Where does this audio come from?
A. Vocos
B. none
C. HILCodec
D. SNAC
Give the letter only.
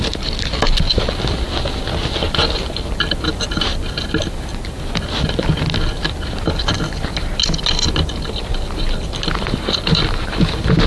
B